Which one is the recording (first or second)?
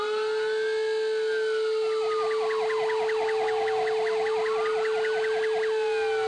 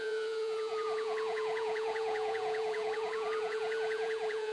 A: first